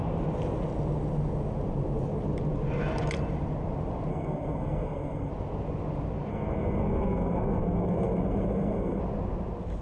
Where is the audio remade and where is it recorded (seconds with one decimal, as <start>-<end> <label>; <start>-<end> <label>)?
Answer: 0.0-4.1 recorded; 4.1-5.3 remade; 5.3-6.3 recorded; 6.3-9.0 remade; 9.0-9.8 recorded